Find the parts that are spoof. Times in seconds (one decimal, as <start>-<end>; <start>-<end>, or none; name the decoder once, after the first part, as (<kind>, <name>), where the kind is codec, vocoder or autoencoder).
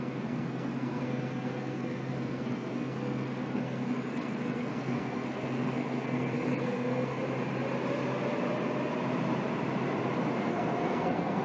0.0-7.2 (codec, SNAC); 10.4-11.4